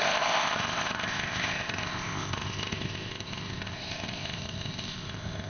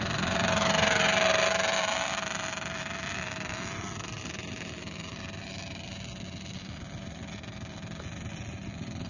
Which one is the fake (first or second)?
first